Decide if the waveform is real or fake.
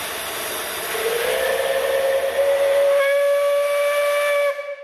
real